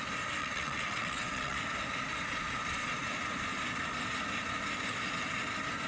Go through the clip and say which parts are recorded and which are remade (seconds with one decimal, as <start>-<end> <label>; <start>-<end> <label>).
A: 0.0-0.4 recorded; 0.4-1.6 remade; 1.6-5.9 recorded